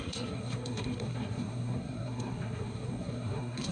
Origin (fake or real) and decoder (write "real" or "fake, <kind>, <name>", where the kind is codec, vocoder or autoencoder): fake, codec, SNAC